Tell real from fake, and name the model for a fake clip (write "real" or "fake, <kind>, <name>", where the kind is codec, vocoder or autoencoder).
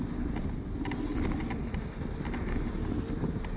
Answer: real